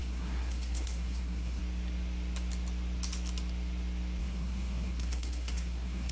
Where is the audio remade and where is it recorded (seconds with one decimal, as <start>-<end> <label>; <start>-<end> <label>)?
0.0-1.6 remade; 1.6-4.2 recorded; 4.2-6.1 remade